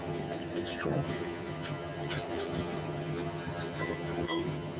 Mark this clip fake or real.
fake